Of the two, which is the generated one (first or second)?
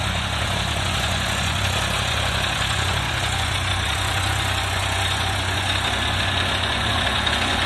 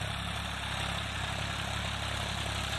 first